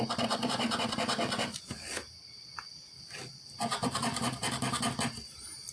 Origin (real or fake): real